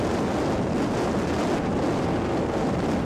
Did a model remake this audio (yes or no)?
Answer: no